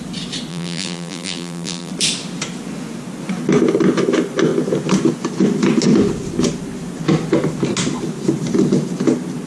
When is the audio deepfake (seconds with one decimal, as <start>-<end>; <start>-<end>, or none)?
0.5-1.9